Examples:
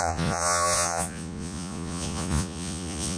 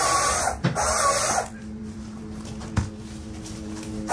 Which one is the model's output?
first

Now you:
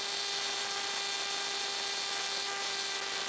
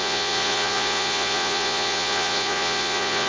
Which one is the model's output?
second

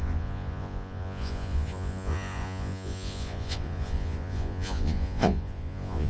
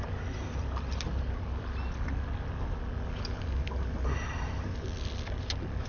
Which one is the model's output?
first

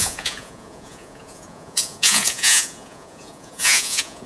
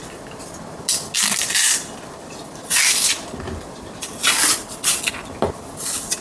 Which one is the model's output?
first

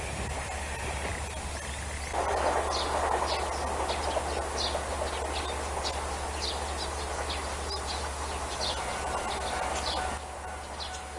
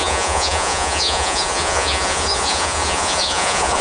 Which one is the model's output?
second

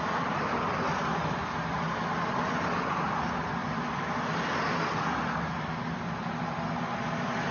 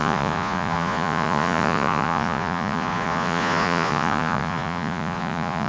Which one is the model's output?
second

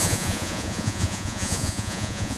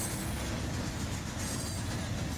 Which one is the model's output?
first